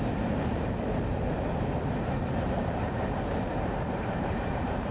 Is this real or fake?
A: fake